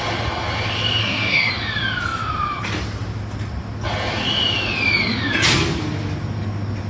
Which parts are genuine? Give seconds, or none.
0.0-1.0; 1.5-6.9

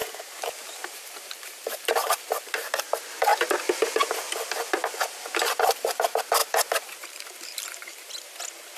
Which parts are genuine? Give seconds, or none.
2.8-6.4; 8.1-8.8

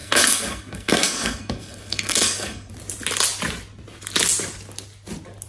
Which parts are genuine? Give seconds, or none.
2.7-5.5

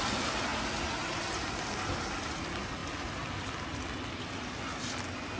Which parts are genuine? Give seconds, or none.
0.0-5.4

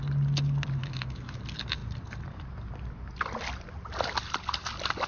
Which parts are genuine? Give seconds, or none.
0.0-0.8; 1.4-5.1

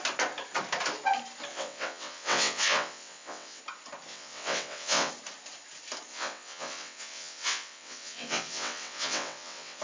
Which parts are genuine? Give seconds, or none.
0.0-1.5; 3.6-4.1; 5.1-6.1

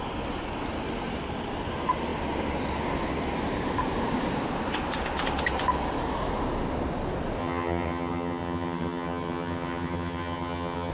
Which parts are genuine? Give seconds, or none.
0.0-7.4